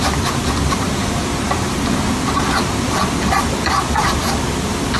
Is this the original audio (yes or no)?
yes